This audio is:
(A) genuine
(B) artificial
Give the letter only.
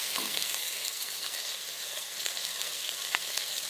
B